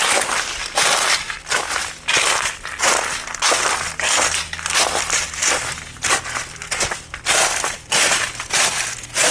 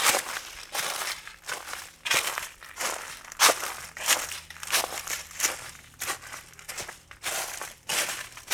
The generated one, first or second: second